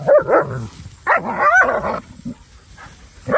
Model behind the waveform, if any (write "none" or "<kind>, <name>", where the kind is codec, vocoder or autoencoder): none